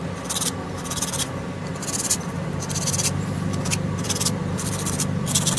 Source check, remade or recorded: remade